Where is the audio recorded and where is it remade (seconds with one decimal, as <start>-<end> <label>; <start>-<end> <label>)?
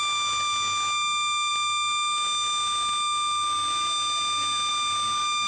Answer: 0.0-5.5 recorded